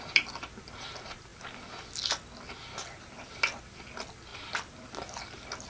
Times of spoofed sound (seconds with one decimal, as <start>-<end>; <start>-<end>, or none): none